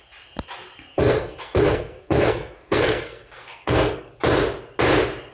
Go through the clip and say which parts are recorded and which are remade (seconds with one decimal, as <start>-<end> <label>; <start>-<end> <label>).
0.0-0.9 recorded; 0.9-4.1 remade; 4.1-5.3 recorded